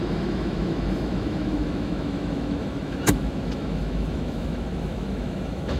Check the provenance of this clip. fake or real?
fake